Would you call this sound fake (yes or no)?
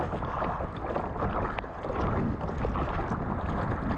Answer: no